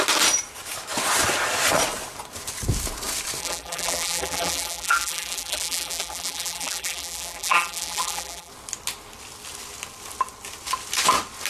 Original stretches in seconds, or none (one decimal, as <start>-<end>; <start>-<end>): 0.0-3.4; 8.5-11.5